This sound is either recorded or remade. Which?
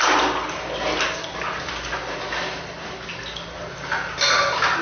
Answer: recorded